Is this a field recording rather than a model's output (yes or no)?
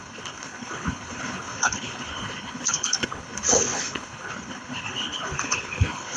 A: no